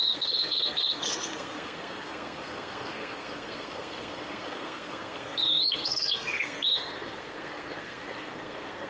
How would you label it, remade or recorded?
remade